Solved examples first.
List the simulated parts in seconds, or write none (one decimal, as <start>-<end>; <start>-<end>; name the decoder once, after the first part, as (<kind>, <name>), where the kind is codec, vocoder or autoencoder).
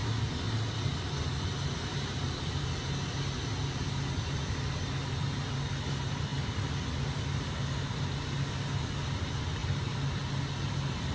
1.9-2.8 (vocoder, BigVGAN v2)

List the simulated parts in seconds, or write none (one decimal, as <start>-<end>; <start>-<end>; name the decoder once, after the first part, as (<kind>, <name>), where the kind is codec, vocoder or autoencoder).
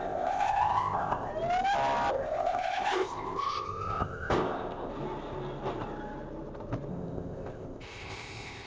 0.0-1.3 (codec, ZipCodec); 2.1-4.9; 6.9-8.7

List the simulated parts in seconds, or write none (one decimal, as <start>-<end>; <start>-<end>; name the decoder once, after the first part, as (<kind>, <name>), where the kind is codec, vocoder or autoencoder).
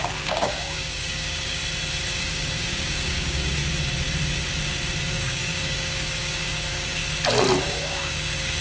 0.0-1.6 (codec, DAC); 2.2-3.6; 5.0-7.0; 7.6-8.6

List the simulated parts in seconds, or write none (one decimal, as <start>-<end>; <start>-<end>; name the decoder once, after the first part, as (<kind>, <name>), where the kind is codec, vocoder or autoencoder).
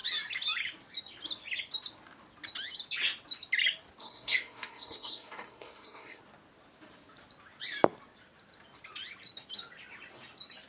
4.0-6.2 (codec, SNAC)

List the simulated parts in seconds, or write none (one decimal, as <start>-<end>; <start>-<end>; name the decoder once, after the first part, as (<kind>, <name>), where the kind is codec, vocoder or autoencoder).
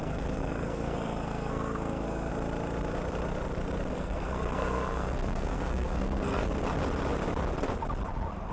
0.0-2.3 (codec, SNAC); 3.9-6.4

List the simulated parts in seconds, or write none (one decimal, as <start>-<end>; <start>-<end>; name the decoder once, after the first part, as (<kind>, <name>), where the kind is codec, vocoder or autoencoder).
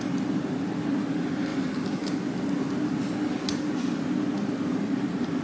none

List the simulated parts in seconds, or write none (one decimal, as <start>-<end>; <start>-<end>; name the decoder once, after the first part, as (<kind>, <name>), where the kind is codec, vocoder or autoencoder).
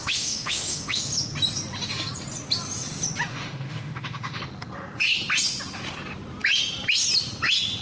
0.0-1.0 (autoencoder, DAC-VAE); 3.3-4.4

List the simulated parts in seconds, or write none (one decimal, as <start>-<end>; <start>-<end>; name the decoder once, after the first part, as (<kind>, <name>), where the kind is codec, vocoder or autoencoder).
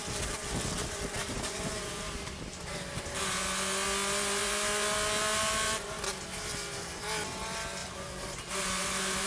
1.2-3.2 (vocoder, BigVGAN v2); 4.4-6.0; 7.8-9.3